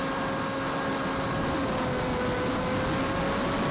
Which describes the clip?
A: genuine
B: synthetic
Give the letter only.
A